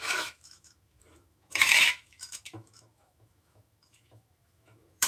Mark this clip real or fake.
fake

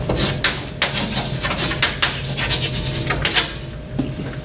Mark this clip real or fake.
real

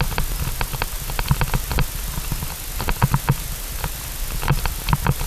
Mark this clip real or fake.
real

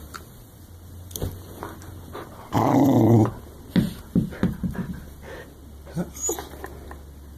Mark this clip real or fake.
real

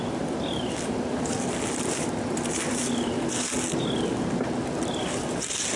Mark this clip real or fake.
real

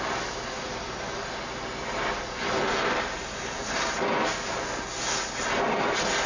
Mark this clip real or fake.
real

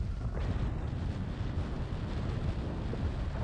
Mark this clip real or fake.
real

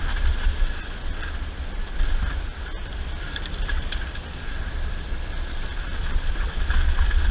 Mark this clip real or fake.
real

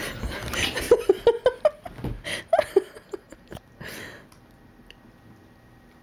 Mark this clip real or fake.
real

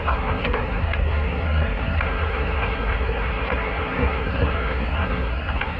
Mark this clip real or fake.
fake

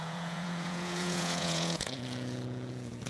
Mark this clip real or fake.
fake